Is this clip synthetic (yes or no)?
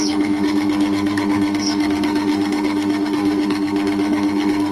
yes